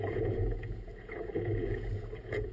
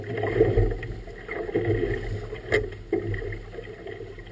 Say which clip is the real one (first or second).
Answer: second